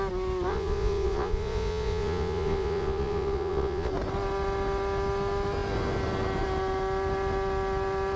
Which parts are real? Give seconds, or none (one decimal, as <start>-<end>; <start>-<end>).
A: 0.0-0.5; 3.9-8.2